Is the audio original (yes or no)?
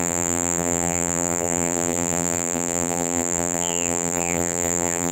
no